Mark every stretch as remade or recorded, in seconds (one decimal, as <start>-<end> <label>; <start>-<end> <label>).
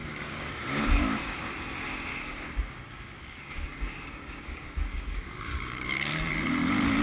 0.0-1.4 remade; 1.4-2.1 recorded; 2.1-6.3 remade; 6.3-7.0 recorded